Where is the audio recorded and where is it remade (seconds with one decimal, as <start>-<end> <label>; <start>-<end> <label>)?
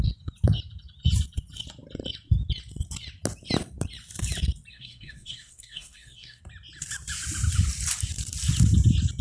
0.0-4.7 recorded; 4.7-6.4 remade; 6.4-9.2 recorded